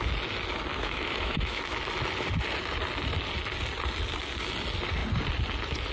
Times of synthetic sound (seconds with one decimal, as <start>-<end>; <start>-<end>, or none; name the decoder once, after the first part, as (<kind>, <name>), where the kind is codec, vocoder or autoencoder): 0.7-1.6 (autoencoder, DAC-VAE)